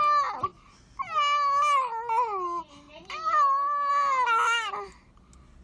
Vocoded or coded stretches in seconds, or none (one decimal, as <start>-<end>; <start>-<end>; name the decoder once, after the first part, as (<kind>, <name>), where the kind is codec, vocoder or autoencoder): none